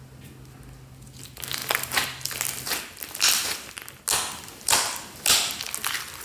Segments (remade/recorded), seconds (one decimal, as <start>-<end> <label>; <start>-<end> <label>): 0.0-6.2 recorded